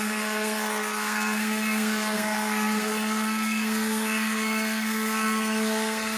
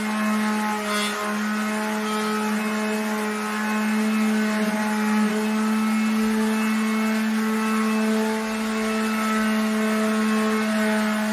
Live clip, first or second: second